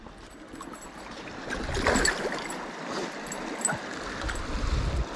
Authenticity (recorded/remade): recorded